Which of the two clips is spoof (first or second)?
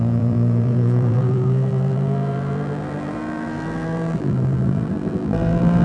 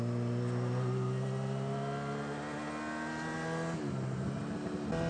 first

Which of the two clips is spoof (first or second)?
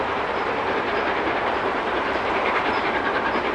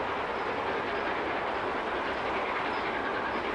first